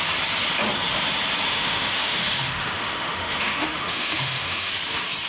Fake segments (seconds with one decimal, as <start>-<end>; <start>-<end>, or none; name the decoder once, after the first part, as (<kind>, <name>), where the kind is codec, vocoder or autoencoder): 1.5-4.7 (autoencoder, DAC-VAE)